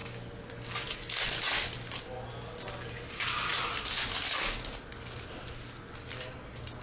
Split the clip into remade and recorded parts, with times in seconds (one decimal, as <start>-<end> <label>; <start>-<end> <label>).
0.0-6.8 recorded